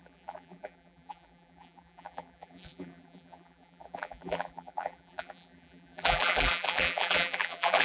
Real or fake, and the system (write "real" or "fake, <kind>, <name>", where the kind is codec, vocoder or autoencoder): fake, vocoder, BigVGAN v2